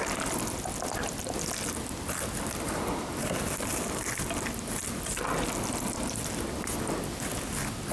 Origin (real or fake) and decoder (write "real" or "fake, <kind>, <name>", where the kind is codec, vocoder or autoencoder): real